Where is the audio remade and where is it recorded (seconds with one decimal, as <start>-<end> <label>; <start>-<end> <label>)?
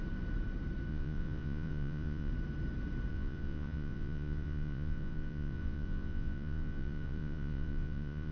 0.0-0.9 recorded; 0.9-2.3 remade; 2.3-3.1 recorded; 3.1-8.3 remade